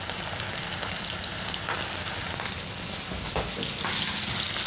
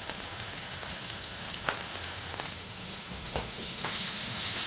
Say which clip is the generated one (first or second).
second